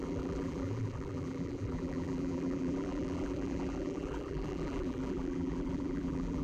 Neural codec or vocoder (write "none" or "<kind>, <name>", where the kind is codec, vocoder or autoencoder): vocoder, BigVGAN v2